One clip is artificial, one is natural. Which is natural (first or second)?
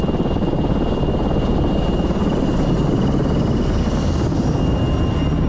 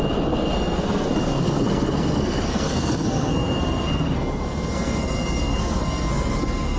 first